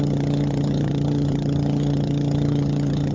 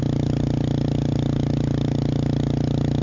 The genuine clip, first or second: second